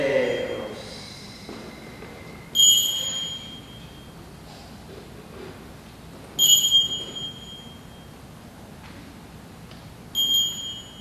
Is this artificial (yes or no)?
no